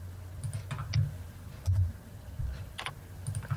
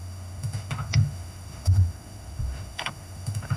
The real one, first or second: first